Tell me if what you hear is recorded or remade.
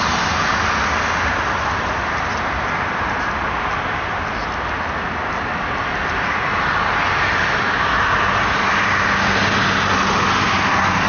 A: recorded